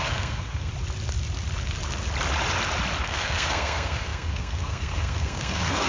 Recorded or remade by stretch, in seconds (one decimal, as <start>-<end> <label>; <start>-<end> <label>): 0.0-0.7 remade; 0.7-3.0 recorded; 3.0-5.9 remade